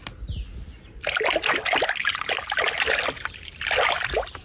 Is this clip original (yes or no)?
yes